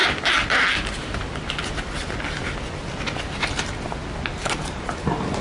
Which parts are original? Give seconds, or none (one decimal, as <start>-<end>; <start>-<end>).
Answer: 0.0-5.4